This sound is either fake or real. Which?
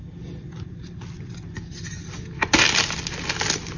real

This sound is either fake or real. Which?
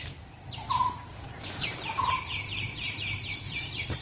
fake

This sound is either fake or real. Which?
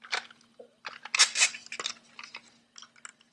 real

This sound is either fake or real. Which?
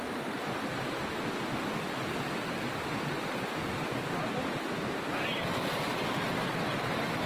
real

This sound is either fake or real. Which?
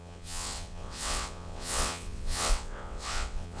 fake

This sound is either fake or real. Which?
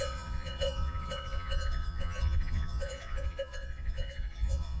fake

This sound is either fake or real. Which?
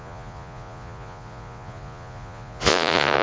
fake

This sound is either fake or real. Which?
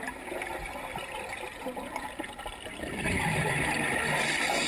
real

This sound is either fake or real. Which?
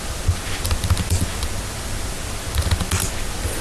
real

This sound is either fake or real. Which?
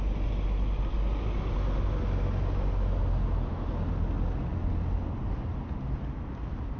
real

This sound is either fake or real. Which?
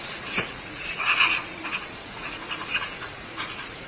fake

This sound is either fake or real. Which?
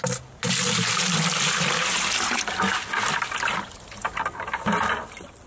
real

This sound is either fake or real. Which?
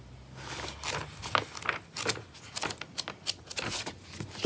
real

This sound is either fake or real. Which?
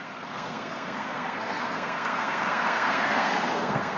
fake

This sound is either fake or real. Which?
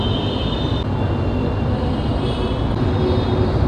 real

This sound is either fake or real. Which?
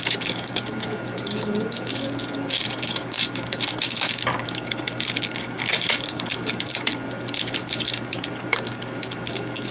fake